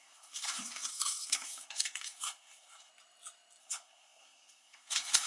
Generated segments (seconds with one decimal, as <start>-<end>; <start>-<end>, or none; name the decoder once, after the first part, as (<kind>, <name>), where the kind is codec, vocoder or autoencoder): 0.0-2.9 (codec, SNAC); 3.6-5.3